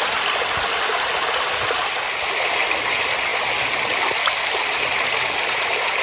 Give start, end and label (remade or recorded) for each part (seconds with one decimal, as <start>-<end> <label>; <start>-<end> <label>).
0.0-6.0 recorded